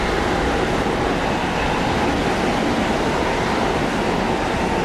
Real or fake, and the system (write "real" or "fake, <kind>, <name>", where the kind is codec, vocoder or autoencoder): real